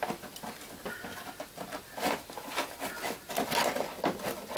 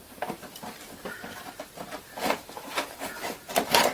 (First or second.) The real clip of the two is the first